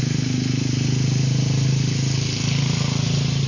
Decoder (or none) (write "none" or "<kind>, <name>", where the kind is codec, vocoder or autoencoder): none